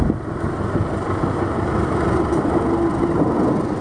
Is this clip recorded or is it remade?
recorded